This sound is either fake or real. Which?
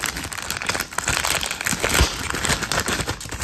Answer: real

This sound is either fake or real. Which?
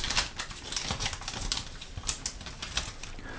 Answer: real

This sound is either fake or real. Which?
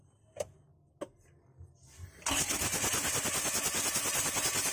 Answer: real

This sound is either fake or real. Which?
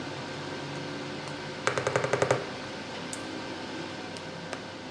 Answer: real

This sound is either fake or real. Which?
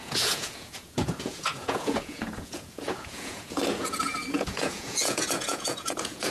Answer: fake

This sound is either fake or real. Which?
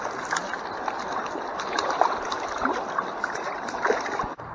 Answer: real